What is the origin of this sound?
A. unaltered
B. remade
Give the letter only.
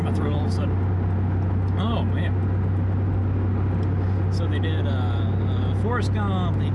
A